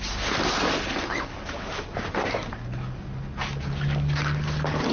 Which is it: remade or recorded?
recorded